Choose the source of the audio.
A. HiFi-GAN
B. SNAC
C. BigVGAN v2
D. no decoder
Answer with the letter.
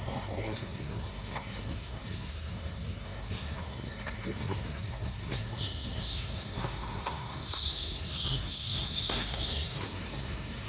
B